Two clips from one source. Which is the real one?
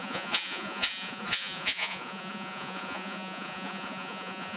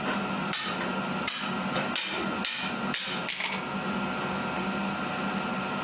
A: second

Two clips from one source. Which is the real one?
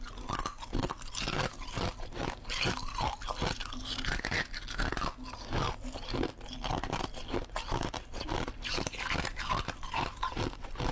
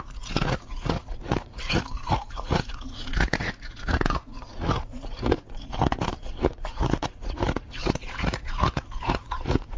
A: first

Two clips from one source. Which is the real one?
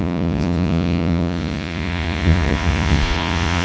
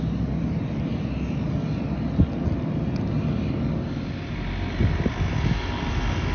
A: second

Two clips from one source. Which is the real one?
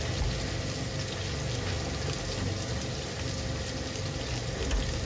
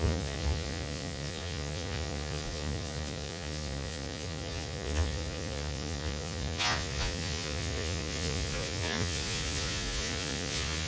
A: first